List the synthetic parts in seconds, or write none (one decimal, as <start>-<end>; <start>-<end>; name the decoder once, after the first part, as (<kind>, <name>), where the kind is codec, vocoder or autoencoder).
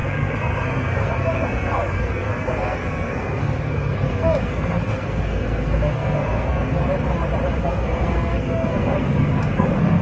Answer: 0.0-6.8 (codec, SNAC); 7.6-10.0